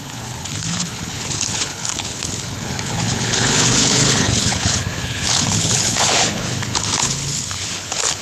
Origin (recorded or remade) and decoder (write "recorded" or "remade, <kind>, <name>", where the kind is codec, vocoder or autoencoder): remade, codec, HILCodec